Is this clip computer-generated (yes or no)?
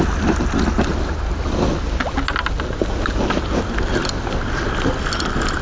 no